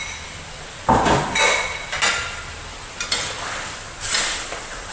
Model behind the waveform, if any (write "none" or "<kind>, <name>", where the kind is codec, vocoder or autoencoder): none